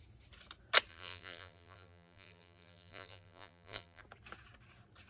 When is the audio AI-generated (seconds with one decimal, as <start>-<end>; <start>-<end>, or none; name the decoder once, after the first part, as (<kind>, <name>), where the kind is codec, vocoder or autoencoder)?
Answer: 0.9-4.0 (vocoder, BigVGAN v2)